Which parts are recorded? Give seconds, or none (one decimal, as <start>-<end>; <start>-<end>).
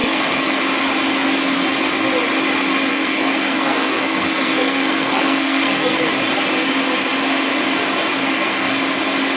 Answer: 0.6-2.9; 6.1-8.2; 8.7-9.4